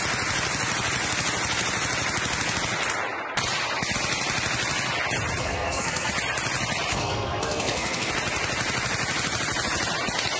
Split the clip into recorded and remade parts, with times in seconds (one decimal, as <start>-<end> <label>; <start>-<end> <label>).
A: 0.0-5.4 recorded; 5.4-6.1 remade; 6.1-6.9 recorded; 6.9-8.1 remade; 8.1-10.4 recorded